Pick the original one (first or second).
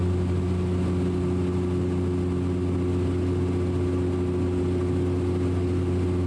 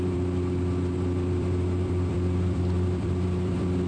first